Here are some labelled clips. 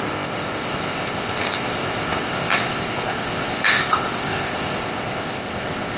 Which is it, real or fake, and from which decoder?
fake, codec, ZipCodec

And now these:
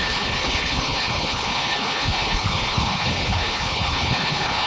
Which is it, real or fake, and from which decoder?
fake, codec, HILCodec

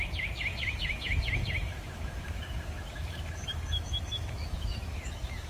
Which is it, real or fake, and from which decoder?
fake, autoencoder, DAC-VAE